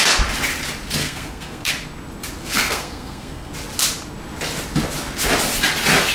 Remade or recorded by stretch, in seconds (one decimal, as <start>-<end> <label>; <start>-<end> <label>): 0.0-1.0 recorded; 1.0-1.7 remade; 1.7-2.4 recorded; 2.4-3.5 remade; 3.5-6.1 recorded